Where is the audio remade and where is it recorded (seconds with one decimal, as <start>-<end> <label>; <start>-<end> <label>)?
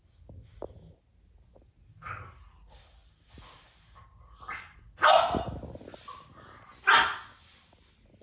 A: 0.0-8.2 recorded